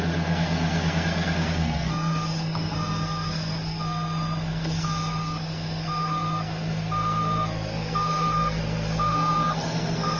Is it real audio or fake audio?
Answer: fake